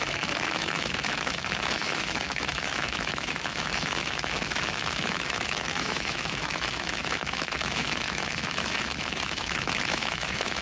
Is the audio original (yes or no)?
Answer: no